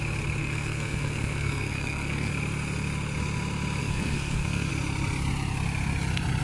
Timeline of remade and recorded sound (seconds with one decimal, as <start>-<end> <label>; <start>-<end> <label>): 0.0-0.4 recorded; 0.4-2.3 remade; 2.3-3.8 recorded; 3.8-4.7 remade; 4.7-6.4 recorded